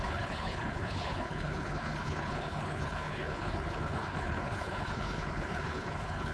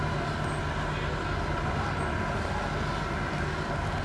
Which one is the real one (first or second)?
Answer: second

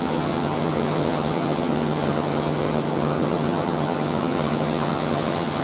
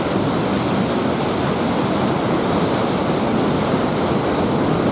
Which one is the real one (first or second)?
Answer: second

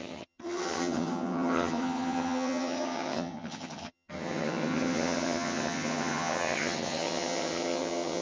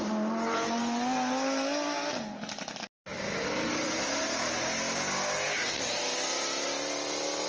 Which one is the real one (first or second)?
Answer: second